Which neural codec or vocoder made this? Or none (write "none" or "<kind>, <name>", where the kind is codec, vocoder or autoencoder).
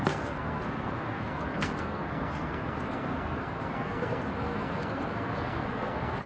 codec, SNAC